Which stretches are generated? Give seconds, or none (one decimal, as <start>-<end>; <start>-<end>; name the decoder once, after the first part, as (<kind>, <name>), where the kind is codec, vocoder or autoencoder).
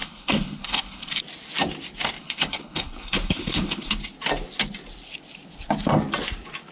0.0-1.2 (codec, HILCodec); 2.2-4.0